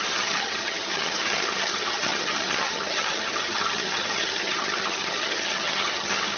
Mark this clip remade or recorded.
remade